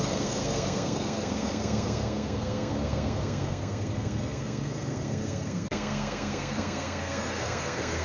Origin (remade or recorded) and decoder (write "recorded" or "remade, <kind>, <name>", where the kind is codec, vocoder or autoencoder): remade, codec, SNAC